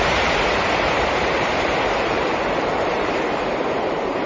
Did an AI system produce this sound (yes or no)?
yes